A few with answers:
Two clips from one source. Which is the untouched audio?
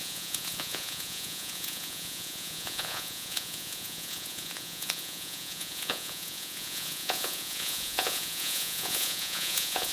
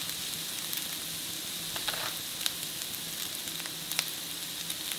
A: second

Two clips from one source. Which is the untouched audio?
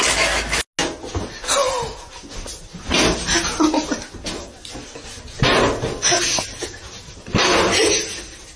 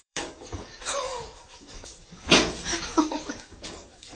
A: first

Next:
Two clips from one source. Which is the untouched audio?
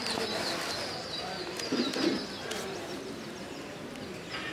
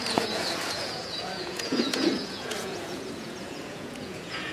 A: first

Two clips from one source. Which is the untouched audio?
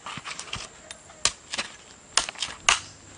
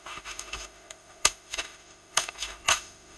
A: first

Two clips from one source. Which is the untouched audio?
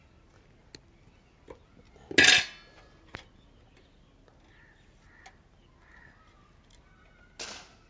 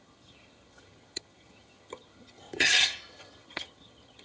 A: first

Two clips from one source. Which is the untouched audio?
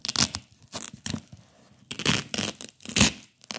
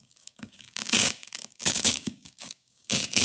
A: first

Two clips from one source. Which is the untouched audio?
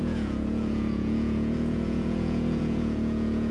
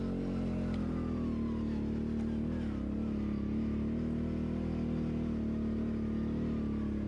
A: second